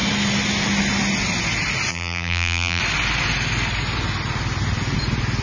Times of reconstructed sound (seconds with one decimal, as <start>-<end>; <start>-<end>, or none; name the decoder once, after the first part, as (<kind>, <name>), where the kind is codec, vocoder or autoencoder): 1.9-2.8 (vocoder, BigVGAN v2)

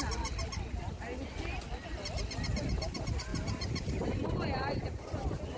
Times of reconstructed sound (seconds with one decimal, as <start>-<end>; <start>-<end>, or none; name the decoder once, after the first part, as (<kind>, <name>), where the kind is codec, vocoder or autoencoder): 3.3-4.1 (vocoder, BigVGAN v2)

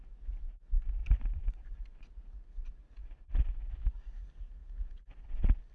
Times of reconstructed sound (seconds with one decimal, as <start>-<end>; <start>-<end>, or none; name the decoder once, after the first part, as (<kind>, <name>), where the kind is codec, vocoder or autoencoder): 1.0-2.1 (vocoder, BigVGAN v2); 3.0-3.9